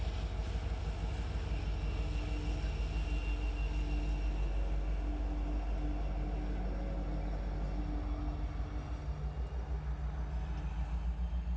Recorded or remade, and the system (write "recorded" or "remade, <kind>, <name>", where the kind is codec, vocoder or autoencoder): recorded